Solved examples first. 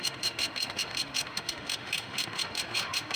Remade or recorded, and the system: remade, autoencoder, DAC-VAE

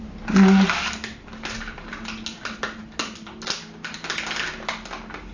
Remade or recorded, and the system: recorded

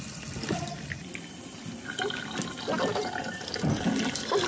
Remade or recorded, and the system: recorded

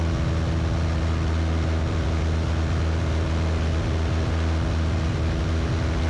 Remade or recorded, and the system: recorded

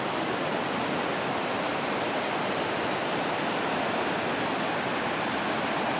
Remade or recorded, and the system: recorded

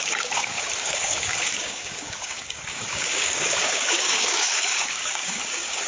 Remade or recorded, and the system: remade, codec, DAC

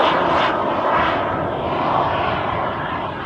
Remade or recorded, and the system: recorded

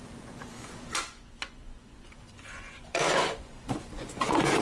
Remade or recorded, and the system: remade, vocoder, Vocos